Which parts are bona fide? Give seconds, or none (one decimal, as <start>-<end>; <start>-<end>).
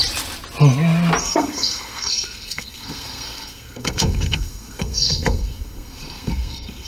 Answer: 0.0-1.2